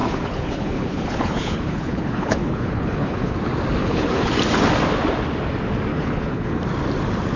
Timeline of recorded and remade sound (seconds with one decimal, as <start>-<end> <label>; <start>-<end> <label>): 0.0-3.3 remade; 3.3-3.8 recorded; 3.8-4.3 remade; 4.3-5.9 recorded; 5.9-6.6 remade; 6.6-7.4 recorded